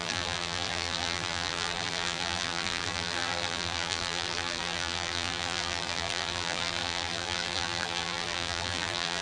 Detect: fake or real fake